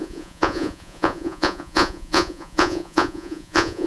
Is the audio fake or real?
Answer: fake